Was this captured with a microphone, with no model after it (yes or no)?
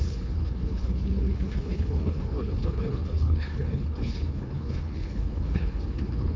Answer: no